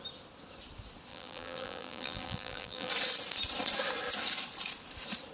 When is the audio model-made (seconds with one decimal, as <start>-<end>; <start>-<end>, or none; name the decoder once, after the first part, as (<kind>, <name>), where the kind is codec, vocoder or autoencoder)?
1.1-2.9 (vocoder, BigVGAN v2)